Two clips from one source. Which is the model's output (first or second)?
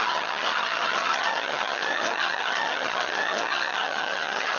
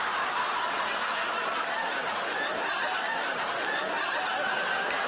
first